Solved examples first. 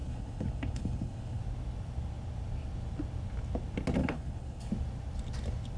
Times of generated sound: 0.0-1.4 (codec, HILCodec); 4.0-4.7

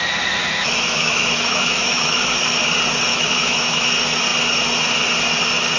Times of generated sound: 0.4-2.4 (autoencoder, DAC-VAE); 3.1-3.9